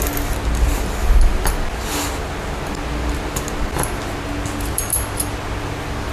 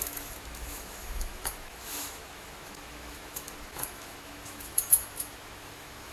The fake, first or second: second